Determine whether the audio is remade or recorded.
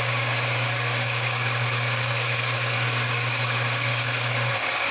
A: remade